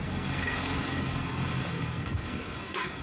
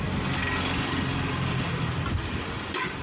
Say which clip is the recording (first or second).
second